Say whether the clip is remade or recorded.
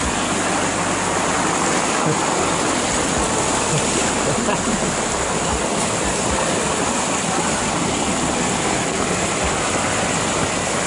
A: recorded